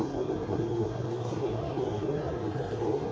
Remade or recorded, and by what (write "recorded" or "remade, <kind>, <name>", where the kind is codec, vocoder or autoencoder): remade, codec, SNAC